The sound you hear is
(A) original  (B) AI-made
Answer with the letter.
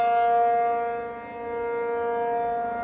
A